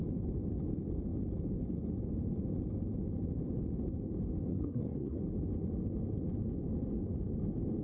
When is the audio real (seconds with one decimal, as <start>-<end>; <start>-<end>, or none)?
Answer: 0.0-4.5; 5.2-7.8